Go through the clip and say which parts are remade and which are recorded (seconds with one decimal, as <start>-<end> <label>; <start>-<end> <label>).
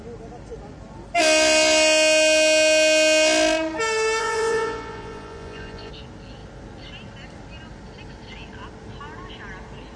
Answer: 0.0-4.2 recorded; 4.2-5.9 remade; 5.9-10.0 recorded